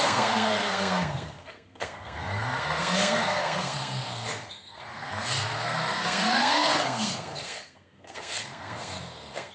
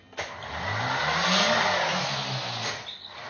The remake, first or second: first